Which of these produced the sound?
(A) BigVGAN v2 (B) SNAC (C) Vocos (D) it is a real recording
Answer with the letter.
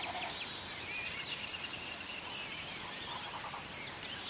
D